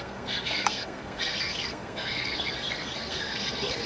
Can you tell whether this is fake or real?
fake